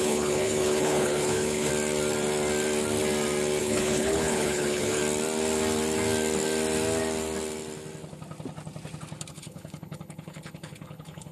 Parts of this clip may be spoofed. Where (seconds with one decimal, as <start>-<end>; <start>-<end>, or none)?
0.0-1.7; 3.6-5.0; 9.3-11.3